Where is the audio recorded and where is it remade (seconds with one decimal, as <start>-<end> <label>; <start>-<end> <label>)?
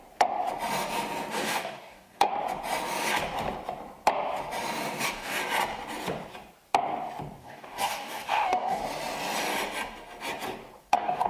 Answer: 0.0-1.3 recorded; 1.3-2.3 remade; 2.3-5.0 recorded; 5.0-5.4 remade; 5.4-7.4 recorded; 7.4-8.8 remade; 8.8-10.8 recorded; 10.8-11.3 remade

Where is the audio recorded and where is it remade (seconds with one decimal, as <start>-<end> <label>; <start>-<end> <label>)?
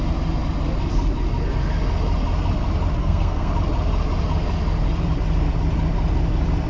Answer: 0.0-3.0 recorded; 3.0-3.5 remade; 3.5-6.7 recorded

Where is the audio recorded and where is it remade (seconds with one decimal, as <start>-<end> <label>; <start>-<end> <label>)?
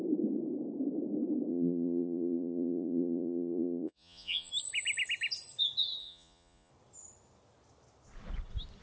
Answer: 0.0-1.5 recorded; 1.5-4.5 remade; 4.5-6.0 recorded; 6.0-6.7 remade; 6.7-8.8 recorded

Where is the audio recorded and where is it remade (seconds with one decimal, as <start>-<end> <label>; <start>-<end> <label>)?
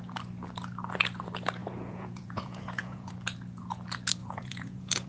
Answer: 0.0-1.6 recorded; 1.6-3.1 remade; 3.1-4.2 recorded; 4.2-5.1 remade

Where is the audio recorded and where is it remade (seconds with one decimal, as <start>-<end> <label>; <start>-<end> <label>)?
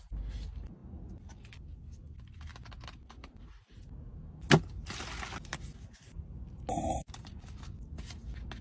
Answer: 0.0-8.6 recorded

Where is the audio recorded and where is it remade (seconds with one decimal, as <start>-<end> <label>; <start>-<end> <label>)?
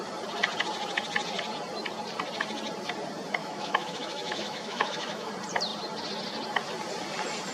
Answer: 0.0-3.4 recorded; 3.4-5.3 remade; 5.3-7.5 recorded